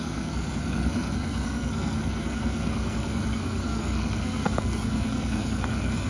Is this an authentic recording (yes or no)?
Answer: no